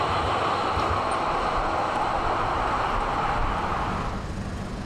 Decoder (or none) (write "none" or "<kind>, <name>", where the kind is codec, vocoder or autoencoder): none